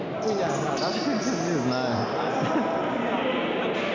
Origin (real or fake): real